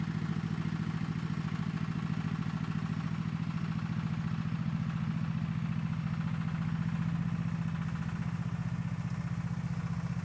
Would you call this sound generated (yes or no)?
no